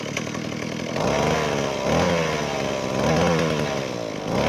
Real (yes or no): yes